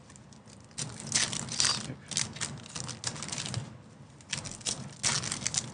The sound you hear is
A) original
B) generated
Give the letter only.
A